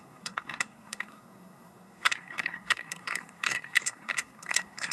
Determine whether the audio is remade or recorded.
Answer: remade